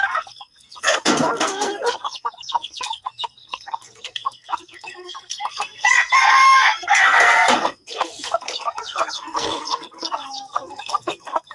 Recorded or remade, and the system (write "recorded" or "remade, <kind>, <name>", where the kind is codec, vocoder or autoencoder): remade, codec, SNAC